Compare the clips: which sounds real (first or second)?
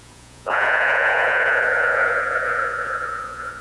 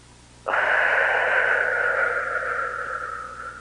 second